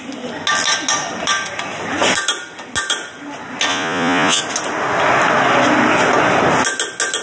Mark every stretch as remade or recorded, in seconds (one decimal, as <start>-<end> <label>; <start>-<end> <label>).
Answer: 0.0-3.7 recorded; 3.7-4.4 remade; 4.4-7.2 recorded